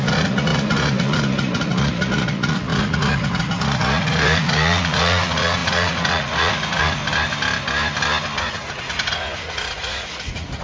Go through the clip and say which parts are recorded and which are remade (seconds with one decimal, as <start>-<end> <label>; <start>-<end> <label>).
0.0-7.0 remade; 7.0-8.4 recorded; 8.4-10.6 remade

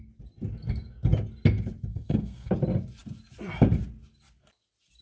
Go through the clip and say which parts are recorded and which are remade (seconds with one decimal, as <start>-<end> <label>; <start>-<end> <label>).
0.0-1.9 recorded; 1.9-2.5 remade; 2.5-5.0 recorded

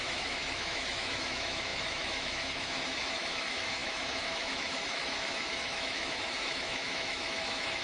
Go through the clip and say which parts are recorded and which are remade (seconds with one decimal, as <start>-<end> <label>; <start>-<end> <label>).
0.0-7.8 remade

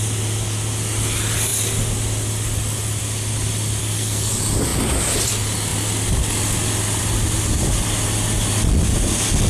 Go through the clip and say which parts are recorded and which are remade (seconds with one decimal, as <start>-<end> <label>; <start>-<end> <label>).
0.0-3.8 recorded; 3.8-4.3 remade; 4.3-9.5 recorded

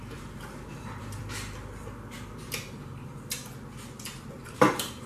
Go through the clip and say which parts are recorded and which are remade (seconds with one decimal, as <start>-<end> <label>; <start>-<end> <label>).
0.0-1.2 remade; 1.2-4.3 recorded; 4.3-5.1 remade